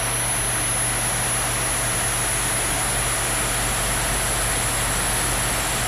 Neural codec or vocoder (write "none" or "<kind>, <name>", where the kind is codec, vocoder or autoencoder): none